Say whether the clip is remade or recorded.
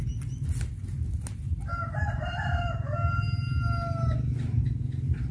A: recorded